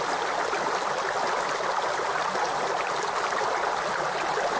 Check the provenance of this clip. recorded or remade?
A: recorded